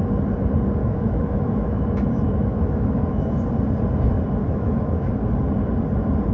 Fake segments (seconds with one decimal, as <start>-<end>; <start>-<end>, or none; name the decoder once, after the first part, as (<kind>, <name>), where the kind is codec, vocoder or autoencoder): 0.8-3.3 (autoencoder, DAC-VAE); 4.4-5.1